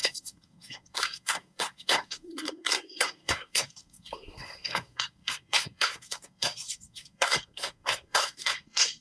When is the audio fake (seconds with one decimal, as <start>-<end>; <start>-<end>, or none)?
0.0-9.0